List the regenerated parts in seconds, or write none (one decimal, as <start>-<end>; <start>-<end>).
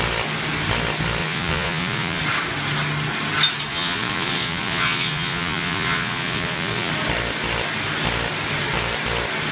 1.2-2.2; 3.7-6.9